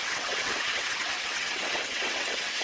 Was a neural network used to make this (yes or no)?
yes